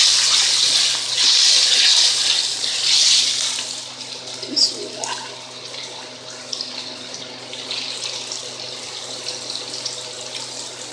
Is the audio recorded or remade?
recorded